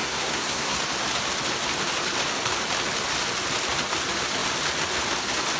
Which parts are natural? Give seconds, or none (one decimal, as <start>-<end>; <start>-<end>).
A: 0.8-5.6